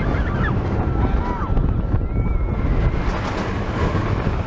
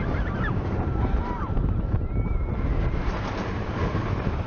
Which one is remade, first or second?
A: second